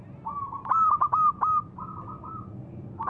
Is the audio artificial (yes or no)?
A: no